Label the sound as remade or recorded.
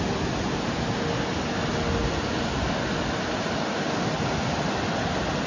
recorded